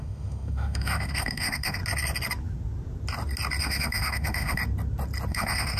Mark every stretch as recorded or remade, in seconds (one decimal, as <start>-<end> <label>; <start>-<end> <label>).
0.0-1.8 remade; 1.8-3.6 recorded; 3.6-4.6 remade; 4.6-5.3 recorded; 5.3-5.8 remade